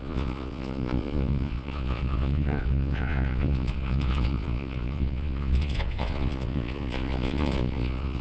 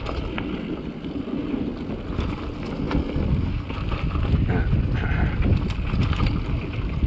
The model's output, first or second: first